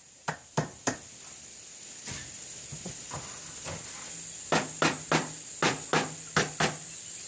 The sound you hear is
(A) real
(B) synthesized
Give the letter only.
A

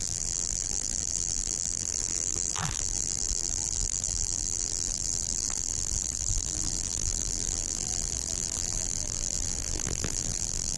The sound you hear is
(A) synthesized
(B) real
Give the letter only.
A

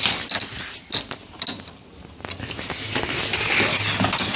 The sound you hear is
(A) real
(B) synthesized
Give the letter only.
A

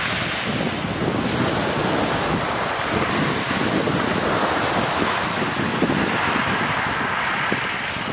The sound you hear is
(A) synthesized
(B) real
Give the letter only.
B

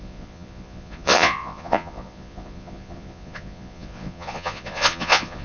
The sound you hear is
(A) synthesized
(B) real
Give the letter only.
A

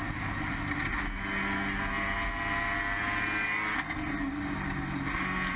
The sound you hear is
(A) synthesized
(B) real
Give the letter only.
B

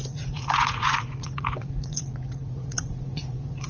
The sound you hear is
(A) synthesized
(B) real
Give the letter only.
A